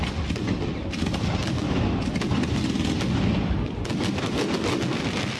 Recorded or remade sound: recorded